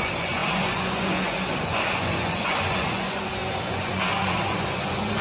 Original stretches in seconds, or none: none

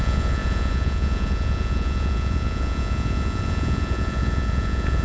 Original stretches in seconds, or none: none

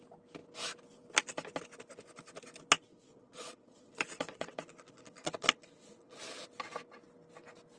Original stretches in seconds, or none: 0.0-2.9; 6.3-7.8